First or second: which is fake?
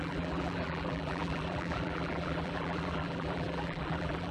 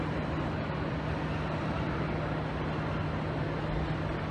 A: first